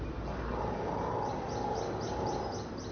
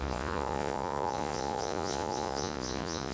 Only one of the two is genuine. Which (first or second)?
first